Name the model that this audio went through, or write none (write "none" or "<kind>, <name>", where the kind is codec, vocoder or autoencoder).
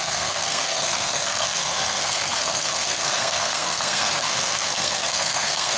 codec, SNAC